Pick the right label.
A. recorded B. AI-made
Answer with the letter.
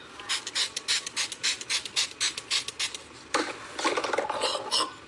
A